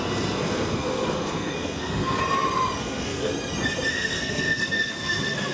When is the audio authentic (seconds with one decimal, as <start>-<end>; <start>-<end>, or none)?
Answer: 2.2-2.8; 3.3-3.9